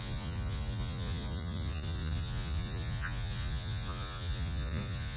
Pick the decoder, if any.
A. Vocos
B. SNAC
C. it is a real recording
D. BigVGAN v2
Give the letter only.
A